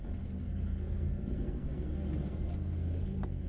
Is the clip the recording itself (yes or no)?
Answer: no